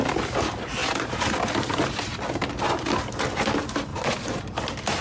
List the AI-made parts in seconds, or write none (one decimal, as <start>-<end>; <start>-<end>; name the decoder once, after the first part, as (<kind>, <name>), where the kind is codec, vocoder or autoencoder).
3.9-4.4 (vocoder, Vocos)